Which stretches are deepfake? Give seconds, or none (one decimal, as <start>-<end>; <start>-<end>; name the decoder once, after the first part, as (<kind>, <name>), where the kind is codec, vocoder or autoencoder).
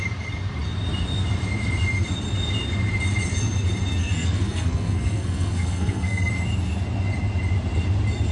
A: 4.0-6.3 (codec, SNAC)